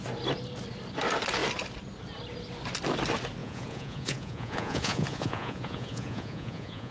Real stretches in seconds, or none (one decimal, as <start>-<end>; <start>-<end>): 0.0-3.4